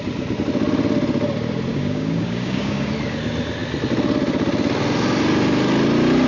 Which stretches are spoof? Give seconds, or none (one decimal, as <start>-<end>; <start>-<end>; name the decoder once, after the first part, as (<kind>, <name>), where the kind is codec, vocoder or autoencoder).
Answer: 1.7-2.9 (codec, DAC)